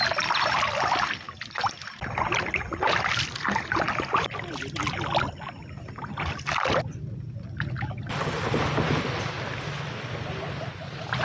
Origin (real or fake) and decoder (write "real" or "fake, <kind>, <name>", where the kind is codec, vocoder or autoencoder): real